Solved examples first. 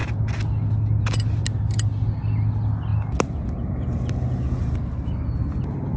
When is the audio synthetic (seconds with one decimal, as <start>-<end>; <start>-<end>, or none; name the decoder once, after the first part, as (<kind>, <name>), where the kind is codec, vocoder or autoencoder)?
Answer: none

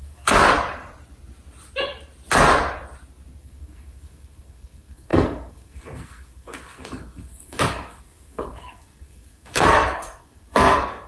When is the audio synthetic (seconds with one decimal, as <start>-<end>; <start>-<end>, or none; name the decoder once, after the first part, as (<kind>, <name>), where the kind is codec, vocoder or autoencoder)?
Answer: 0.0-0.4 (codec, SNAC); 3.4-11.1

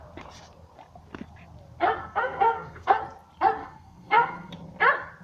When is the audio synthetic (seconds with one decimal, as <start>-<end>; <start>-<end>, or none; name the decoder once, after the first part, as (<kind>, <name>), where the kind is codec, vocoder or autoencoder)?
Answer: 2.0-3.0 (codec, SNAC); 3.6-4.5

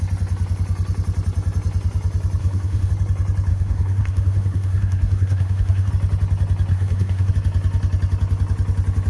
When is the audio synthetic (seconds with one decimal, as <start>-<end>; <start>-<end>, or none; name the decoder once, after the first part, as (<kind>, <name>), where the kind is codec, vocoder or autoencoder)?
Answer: 2.4-2.9 (codec, SNAC); 3.5-5.9; 6.7-7.3

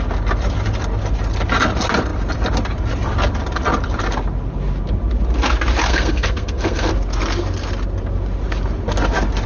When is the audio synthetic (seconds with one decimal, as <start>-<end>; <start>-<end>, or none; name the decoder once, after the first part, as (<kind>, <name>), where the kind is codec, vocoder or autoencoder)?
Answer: 5.9-6.9 (codec, SNAC)

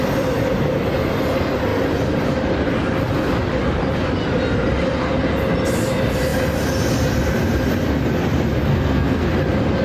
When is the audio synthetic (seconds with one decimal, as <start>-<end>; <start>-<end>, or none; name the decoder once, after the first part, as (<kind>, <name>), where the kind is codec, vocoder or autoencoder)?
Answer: 8.7-9.3 (codec, SNAC)